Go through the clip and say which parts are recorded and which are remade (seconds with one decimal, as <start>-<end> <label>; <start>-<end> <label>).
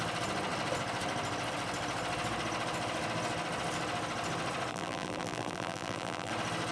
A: 0.0-4.7 recorded; 4.7-6.3 remade; 6.3-6.7 recorded